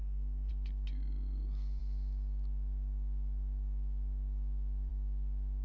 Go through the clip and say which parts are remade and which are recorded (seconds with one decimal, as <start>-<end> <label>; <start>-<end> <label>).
0.0-0.5 remade; 0.5-5.6 recorded